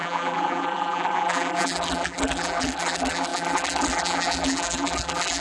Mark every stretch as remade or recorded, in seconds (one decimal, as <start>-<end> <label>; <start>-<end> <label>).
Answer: 0.0-5.4 remade